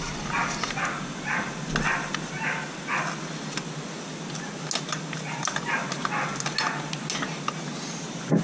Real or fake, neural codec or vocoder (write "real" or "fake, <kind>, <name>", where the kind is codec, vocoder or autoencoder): real